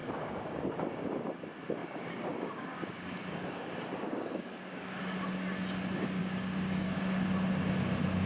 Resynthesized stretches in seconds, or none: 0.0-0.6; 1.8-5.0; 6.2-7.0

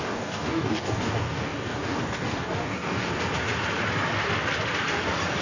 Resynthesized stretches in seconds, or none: 0.0-3.1

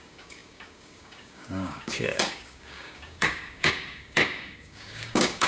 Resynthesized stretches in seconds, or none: 0.0-5.5

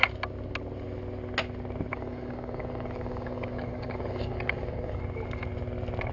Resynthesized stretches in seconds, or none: 1.9-5.0

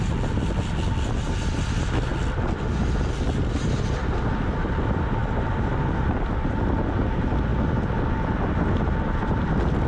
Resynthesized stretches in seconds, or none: none

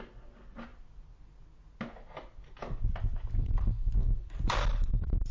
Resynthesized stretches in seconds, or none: none

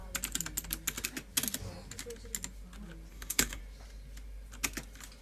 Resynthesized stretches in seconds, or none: 3.1-3.6